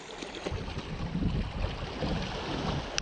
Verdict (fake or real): real